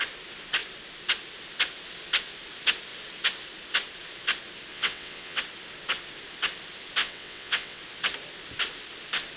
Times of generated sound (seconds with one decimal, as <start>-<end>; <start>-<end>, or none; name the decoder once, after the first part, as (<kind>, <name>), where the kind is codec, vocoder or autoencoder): 4.7-5.4 (vocoder, WaveNeXt); 7.0-7.8